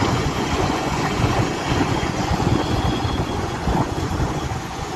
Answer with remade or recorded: remade